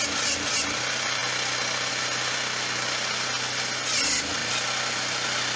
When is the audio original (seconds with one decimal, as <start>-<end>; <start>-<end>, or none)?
0.0-5.6